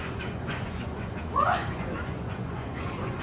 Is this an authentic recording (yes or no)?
no